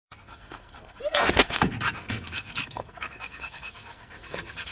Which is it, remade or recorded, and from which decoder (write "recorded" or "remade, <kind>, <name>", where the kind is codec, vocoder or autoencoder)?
remade, codec, SNAC